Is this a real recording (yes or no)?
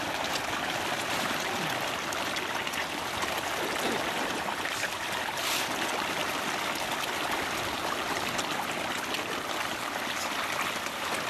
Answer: yes